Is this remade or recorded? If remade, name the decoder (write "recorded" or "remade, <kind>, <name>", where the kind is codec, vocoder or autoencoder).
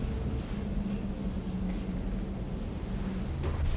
recorded